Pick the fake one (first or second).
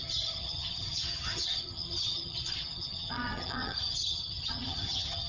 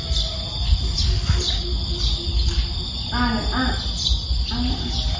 first